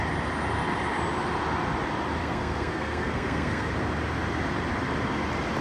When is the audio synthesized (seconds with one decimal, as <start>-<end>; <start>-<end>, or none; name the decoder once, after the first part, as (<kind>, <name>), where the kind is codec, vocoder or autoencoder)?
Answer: 2.2-3.7 (codec, SNAC)